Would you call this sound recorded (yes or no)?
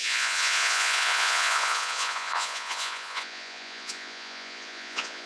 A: no